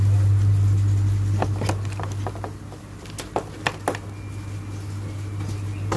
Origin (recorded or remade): recorded